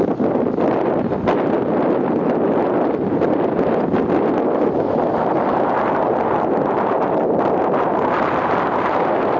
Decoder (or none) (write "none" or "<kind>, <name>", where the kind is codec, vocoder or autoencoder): none